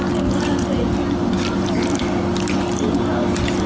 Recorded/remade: recorded